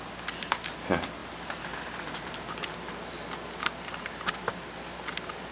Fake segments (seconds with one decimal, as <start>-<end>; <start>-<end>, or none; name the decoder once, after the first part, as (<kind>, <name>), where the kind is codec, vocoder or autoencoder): none